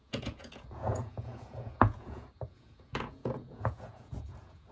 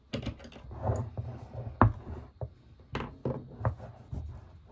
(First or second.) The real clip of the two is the second